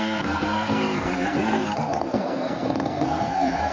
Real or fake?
fake